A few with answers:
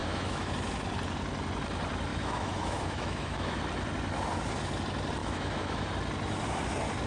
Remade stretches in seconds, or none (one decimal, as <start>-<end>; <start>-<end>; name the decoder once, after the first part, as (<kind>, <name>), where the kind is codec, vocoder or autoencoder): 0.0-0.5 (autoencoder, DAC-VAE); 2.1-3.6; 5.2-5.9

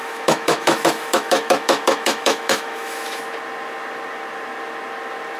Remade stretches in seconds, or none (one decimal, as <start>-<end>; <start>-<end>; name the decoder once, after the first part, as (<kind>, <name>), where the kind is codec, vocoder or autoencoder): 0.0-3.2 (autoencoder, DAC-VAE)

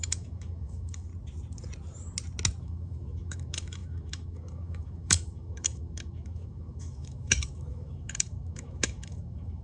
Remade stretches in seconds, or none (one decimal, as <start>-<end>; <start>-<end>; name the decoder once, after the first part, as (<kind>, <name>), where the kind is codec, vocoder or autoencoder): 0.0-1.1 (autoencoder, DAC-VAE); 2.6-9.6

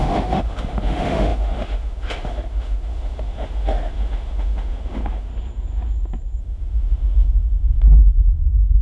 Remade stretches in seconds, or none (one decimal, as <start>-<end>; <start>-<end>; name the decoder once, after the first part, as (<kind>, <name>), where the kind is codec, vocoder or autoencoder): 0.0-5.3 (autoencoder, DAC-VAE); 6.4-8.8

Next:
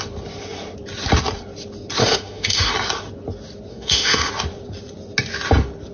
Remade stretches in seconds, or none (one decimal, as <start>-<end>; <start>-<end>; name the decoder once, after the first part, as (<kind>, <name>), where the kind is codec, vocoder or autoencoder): 2.0-2.7 (autoencoder, DAC-VAE); 3.7-4.3